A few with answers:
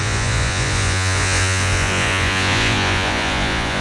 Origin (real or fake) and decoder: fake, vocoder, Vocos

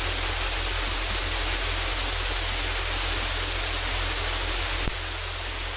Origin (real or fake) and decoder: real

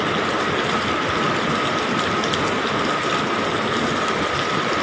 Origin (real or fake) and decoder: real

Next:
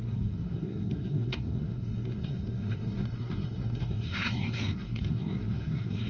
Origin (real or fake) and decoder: fake, codec, SNAC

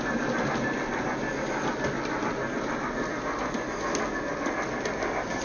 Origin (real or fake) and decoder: real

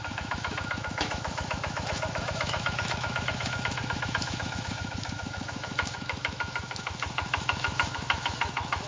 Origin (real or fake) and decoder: fake, autoencoder, DAC-VAE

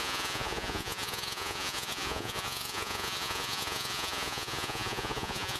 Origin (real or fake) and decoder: fake, vocoder, Vocos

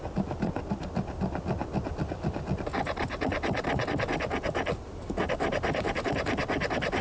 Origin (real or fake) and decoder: real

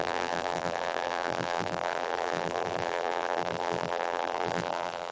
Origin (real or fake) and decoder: fake, vocoder, BigVGAN v2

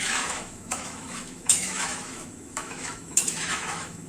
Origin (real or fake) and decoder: fake, autoencoder, DAC-VAE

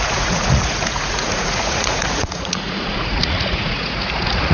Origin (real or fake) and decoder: fake, vocoder, Vocos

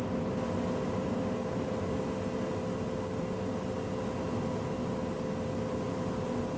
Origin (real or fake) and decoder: real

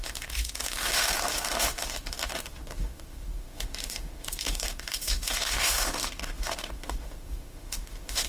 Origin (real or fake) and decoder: fake, autoencoder, DAC-VAE